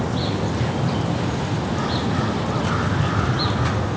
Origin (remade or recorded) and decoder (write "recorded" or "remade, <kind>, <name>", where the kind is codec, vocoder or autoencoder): recorded